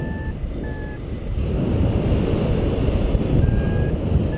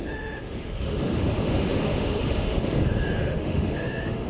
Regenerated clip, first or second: second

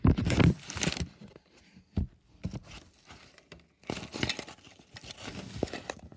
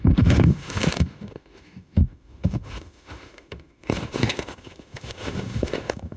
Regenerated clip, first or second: second